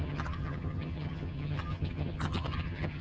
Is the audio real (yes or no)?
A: no